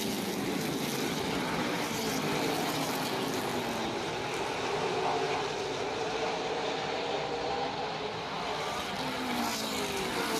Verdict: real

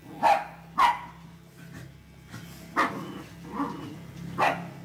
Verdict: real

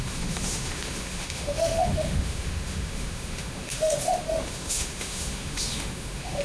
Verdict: fake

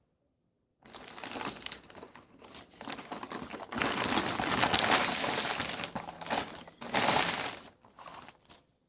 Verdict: real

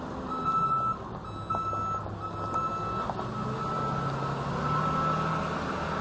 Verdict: real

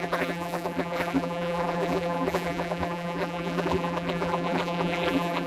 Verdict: fake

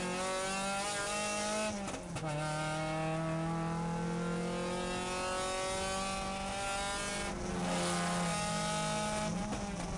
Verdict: real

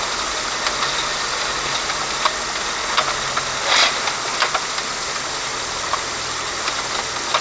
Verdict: real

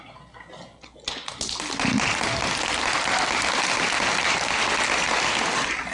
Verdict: real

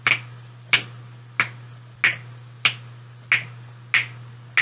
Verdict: real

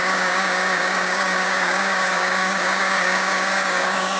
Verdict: fake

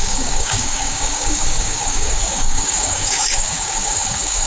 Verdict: fake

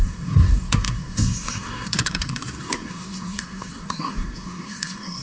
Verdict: fake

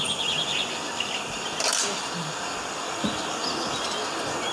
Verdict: real